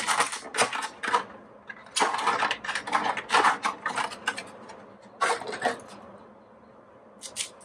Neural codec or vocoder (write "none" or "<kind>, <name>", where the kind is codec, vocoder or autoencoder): none